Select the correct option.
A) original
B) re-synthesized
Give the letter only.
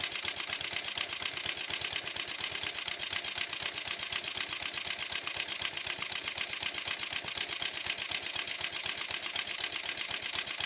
A